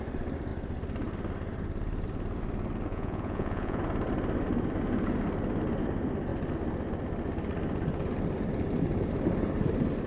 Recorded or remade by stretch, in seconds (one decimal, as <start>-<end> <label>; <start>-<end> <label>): 0.0-2.9 recorded; 2.9-3.8 remade; 3.8-10.1 recorded